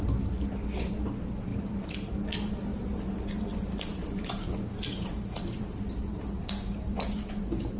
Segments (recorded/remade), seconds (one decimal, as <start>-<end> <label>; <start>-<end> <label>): 0.0-1.5 recorded; 1.5-2.1 remade; 2.1-2.7 recorded; 2.7-7.8 remade